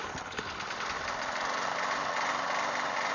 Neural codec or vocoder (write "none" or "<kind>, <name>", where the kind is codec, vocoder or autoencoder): none